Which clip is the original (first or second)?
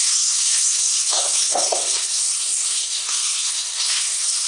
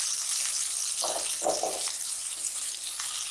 second